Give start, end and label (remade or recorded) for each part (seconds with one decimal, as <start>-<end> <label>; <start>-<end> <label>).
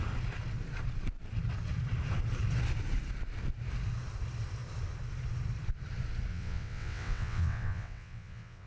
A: 0.0-6.3 recorded; 6.3-8.7 remade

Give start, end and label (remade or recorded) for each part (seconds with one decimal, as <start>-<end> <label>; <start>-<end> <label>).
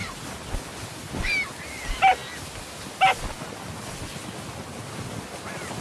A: 0.0-5.8 recorded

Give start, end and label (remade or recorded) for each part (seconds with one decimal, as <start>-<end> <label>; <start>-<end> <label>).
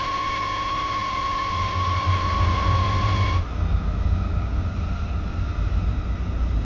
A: 0.0-6.6 recorded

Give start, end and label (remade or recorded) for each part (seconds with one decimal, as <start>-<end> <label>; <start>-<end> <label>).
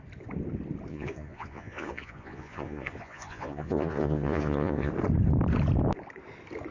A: 0.0-0.9 recorded; 0.9-4.9 remade; 4.9-6.7 recorded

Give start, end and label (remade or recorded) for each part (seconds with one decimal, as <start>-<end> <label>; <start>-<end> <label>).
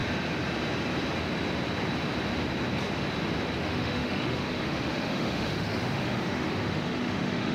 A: 0.0-3.6 recorded; 3.6-7.5 remade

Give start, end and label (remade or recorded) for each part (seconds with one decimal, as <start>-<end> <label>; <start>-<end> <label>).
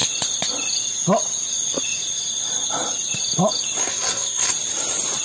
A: 0.0-3.8 recorded; 3.8-4.5 remade; 4.5-5.2 recorded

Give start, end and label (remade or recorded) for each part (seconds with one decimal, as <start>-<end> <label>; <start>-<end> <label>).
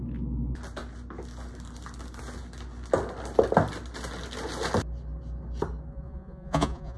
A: 0.0-5.9 recorded; 5.9-7.0 remade